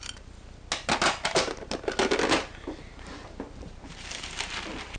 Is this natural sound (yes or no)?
yes